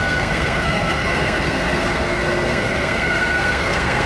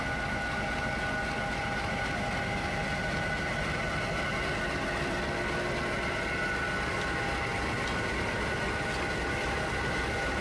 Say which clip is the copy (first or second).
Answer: first